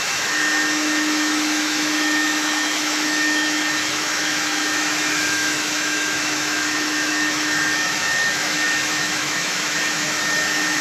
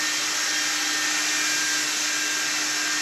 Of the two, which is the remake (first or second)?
first